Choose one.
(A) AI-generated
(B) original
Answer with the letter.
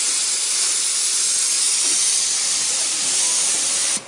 B